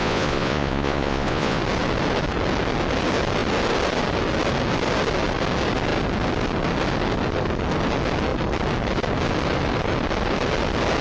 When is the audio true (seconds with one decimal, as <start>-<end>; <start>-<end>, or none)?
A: 1.6-11.0